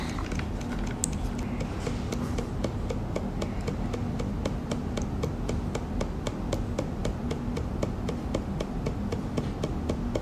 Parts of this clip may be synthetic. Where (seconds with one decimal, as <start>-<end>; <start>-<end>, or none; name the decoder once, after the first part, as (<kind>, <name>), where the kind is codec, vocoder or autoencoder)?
7.0-9.2 (vocoder, BigVGAN v2)

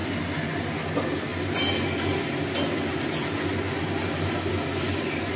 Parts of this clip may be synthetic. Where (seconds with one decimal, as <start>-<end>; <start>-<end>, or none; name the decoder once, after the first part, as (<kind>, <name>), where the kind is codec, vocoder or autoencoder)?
none